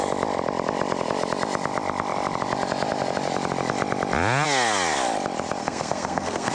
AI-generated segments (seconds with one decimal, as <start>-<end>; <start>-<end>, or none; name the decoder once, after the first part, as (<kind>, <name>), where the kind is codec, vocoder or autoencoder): 5.6-6.5 (codec, SNAC)